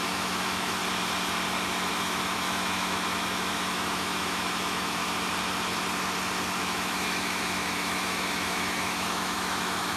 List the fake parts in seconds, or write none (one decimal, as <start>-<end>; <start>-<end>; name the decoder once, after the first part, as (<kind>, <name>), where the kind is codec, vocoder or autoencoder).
0.0-0.8 (autoencoder, DAC-VAE); 1.9-5.0; 6.6-10.0